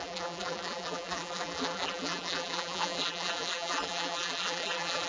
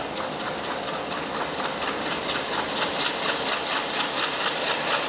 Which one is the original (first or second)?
second